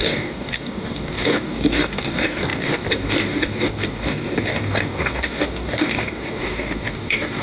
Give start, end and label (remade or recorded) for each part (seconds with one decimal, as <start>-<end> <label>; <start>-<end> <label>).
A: 0.0-7.4 remade